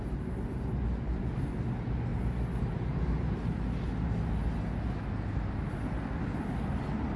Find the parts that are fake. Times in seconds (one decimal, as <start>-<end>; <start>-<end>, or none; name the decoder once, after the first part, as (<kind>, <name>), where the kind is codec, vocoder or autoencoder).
none